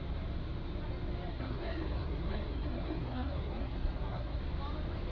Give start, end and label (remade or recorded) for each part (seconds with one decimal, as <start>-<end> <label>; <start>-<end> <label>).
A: 0.0-1.3 recorded; 1.3-4.4 remade; 4.4-5.1 recorded